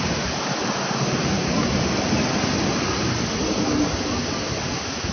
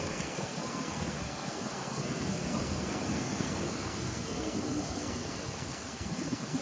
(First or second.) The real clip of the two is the first